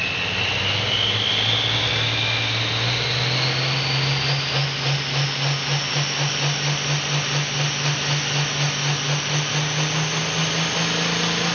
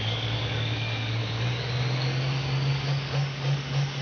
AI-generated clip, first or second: second